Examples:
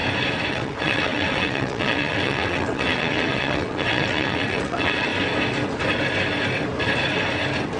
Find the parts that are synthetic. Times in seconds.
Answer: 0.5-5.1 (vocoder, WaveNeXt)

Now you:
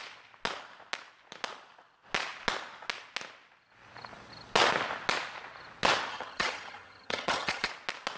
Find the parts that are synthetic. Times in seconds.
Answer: 6.1-7.7 (vocoder, HiFi-GAN)

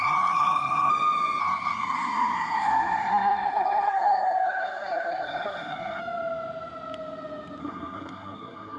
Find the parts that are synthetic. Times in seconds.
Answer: 0.0-0.9 (codec, SNAC); 1.4-6.0; 7.6-8.8

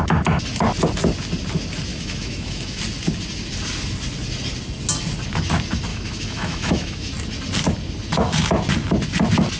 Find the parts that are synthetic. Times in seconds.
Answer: 1.9-2.8 (autoencoder, DAC-VAE); 5.9-7.1

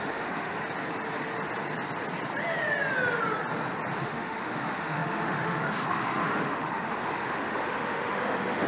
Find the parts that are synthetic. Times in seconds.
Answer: 0.0-0.6 (autoencoder, DAC-VAE); 3.9-8.7

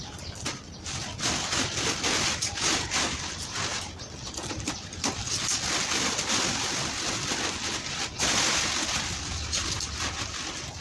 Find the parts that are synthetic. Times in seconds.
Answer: none